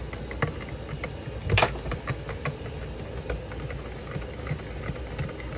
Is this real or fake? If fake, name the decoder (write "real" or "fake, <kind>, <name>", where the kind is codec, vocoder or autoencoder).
real